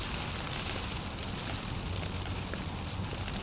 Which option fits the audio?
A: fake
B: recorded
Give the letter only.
B